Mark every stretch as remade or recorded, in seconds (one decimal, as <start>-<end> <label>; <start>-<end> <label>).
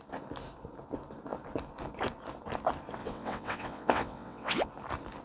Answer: 0.0-3.0 recorded; 3.0-4.7 remade; 4.7-5.2 recorded